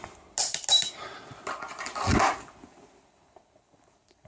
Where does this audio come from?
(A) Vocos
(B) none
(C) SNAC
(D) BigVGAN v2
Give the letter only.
B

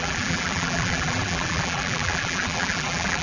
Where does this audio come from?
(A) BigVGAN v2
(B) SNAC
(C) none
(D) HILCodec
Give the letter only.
A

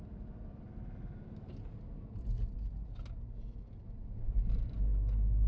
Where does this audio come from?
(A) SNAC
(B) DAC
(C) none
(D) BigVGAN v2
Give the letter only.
C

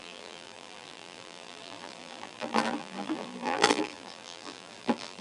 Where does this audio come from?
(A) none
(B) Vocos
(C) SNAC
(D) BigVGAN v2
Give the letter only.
D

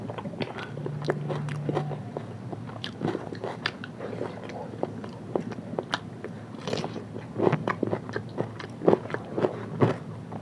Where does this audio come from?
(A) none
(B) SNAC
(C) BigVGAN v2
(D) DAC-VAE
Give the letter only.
A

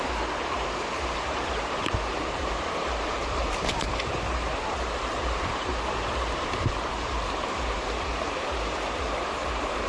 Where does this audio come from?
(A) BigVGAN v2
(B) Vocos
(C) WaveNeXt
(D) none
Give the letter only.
A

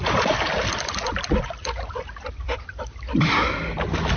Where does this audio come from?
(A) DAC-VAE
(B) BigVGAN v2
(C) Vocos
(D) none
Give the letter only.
B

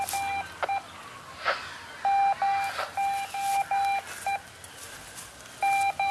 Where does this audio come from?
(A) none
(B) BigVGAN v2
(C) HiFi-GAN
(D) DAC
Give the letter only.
A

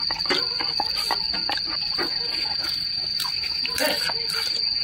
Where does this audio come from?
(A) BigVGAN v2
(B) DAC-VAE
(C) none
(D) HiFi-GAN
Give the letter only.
C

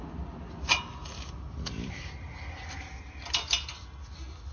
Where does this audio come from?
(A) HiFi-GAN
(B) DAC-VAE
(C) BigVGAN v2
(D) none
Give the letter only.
D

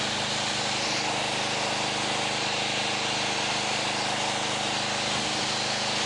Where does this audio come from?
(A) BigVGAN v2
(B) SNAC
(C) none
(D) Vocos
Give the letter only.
C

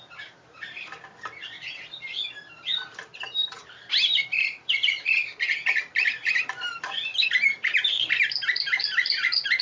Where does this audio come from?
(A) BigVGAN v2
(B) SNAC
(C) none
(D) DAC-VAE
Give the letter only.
A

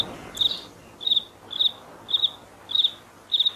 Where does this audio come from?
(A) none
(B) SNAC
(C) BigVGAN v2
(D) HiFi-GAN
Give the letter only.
A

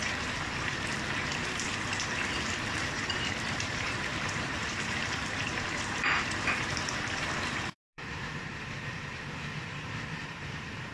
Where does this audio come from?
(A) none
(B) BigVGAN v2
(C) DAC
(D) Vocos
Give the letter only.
B